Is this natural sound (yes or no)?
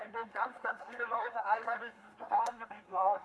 no